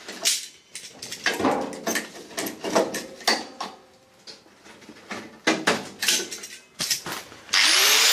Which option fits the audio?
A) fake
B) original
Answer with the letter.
B